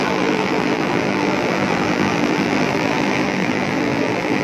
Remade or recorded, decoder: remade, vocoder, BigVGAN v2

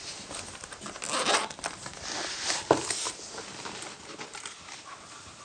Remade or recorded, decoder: recorded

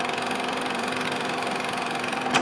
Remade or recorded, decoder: remade, vocoder, BigVGAN v2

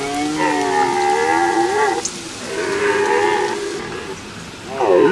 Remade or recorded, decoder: recorded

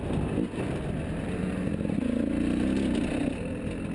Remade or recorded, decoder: recorded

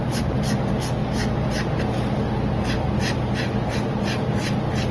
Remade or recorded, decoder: recorded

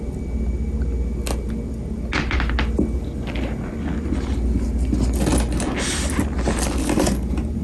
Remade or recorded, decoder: recorded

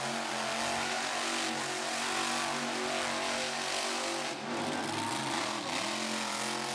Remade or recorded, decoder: recorded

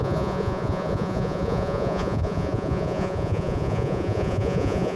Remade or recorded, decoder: remade, vocoder, Vocos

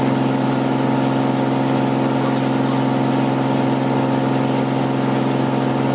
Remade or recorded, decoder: recorded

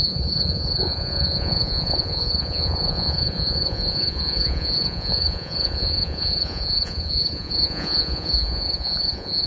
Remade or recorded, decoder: remade, vocoder, Vocos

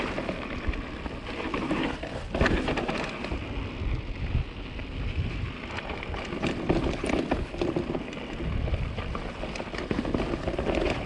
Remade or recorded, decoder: recorded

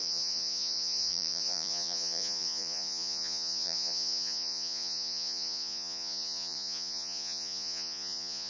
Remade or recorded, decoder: remade, vocoder, Vocos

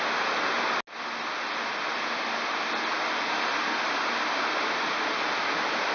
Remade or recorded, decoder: recorded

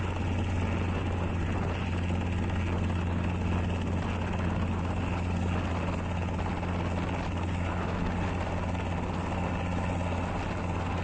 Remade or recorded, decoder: recorded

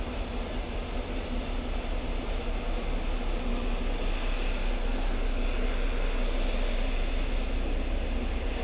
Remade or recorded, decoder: recorded